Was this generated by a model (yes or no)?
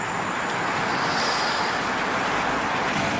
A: no